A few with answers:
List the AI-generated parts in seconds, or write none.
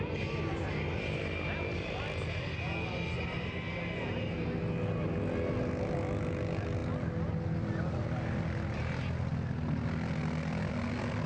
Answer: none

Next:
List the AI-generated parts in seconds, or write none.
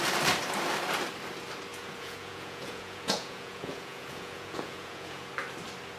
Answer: 1.7-5.3 (vocoder, Vocos)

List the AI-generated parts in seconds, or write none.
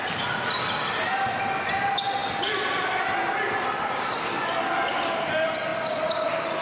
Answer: none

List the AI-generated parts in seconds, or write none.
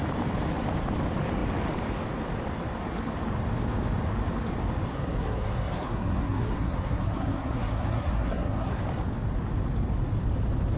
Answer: 4.9-8.8 (codec, SNAC)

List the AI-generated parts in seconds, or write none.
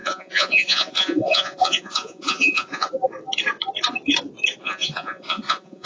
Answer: 0.0-2.9 (vocoder, Vocos); 4.6-5.9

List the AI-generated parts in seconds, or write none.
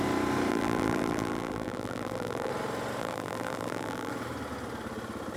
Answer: 0.5-2.5 (vocoder, BigVGAN v2); 3.0-4.1